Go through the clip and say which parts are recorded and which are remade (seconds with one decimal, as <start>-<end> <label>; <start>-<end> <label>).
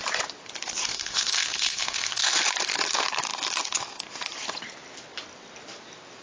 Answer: 0.0-0.9 recorded; 0.9-2.4 remade; 2.4-6.2 recorded